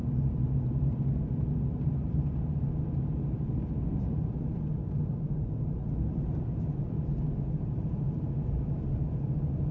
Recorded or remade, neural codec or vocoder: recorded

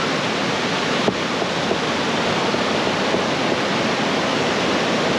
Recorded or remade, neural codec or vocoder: recorded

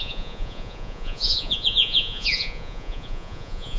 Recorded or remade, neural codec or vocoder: remade, vocoder, Vocos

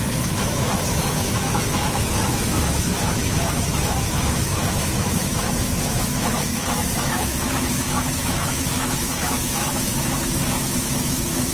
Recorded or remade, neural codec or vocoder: remade, autoencoder, DAC-VAE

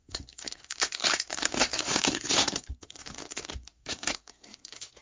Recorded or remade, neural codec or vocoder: remade, codec, SNAC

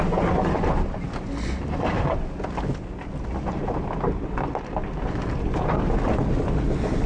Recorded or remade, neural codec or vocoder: recorded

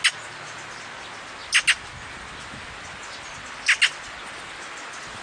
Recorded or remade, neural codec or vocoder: recorded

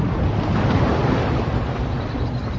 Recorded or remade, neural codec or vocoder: recorded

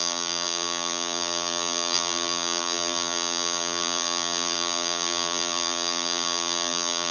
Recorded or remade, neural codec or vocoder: remade, vocoder, BigVGAN v2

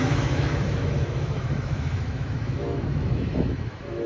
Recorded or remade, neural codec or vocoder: remade, autoencoder, DAC-VAE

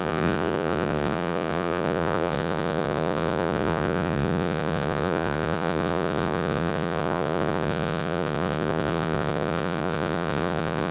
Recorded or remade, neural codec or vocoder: remade, vocoder, Vocos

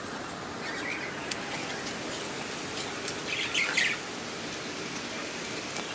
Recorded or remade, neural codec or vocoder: recorded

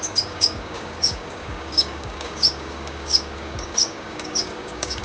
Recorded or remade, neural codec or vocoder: remade, codec, DAC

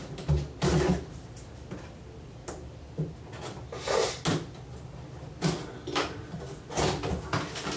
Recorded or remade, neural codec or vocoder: recorded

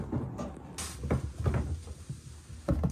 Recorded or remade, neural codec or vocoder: recorded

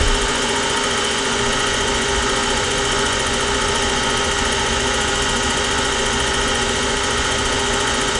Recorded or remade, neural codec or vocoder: remade, vocoder, Vocos